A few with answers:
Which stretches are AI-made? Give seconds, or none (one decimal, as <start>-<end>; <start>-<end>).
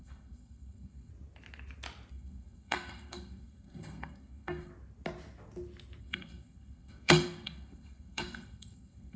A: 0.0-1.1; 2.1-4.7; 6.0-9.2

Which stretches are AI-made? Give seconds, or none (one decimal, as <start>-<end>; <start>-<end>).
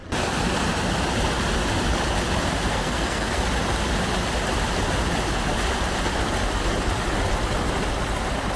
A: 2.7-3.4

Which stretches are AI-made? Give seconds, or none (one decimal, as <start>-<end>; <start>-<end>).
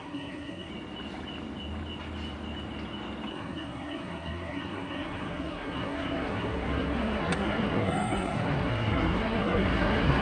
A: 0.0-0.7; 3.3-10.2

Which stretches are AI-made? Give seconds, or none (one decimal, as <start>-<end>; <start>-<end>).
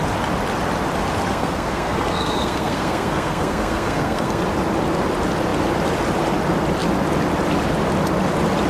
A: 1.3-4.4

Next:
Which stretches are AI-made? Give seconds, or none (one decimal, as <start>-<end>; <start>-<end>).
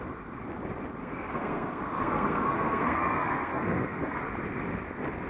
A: 1.0-4.2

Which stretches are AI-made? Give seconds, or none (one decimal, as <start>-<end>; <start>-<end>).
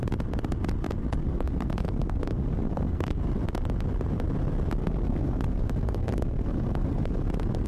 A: 1.2-3.2; 4.8-7.3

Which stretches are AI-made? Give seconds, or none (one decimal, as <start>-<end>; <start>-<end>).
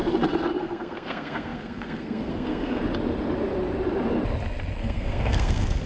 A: 0.6-2.8; 4.8-5.9